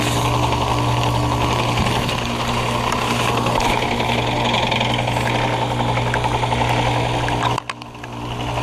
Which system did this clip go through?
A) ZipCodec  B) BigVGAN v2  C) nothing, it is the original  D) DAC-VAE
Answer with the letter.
C